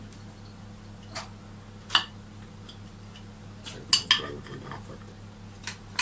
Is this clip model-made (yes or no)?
no